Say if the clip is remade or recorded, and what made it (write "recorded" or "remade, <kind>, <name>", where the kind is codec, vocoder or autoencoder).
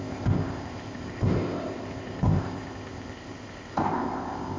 remade, codec, ZipCodec